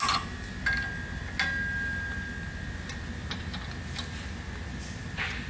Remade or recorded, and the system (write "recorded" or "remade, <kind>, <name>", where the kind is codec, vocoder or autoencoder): recorded